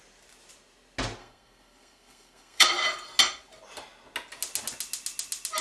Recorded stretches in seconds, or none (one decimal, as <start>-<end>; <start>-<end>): 0.0-1.2; 2.7-5.6

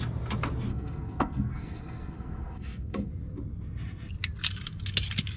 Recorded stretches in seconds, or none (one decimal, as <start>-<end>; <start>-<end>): 0.0-0.7; 3.1-5.4